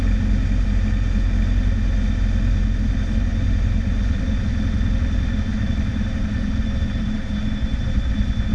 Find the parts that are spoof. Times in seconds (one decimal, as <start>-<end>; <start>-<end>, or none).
3.3-4.2; 5.5-8.1